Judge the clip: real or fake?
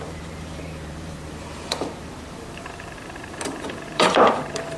fake